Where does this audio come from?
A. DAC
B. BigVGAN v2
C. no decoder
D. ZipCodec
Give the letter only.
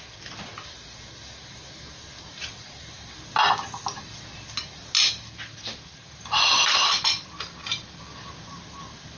C